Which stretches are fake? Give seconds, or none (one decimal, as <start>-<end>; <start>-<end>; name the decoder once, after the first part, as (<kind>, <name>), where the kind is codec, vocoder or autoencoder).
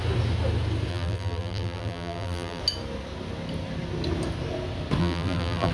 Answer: 0.9-2.6 (vocoder, BigVGAN v2); 5.0-5.7